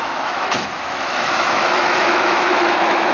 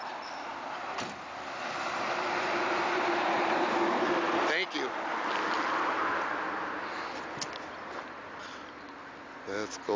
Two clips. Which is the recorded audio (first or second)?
second